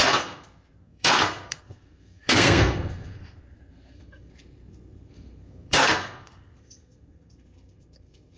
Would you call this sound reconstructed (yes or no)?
yes